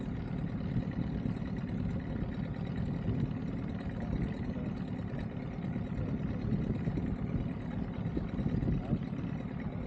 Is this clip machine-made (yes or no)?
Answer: no